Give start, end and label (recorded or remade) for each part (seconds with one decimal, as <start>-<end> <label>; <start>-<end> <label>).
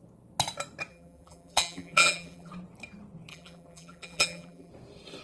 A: 0.0-0.9 recorded; 0.9-2.5 remade; 2.5-3.3 recorded; 3.3-4.7 remade; 4.7-5.2 recorded